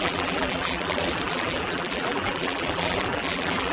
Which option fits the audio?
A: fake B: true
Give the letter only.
A